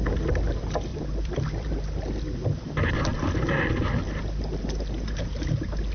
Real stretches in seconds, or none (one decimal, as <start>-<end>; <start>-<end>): 0.0-0.9; 1.7-3.1; 4.6-5.9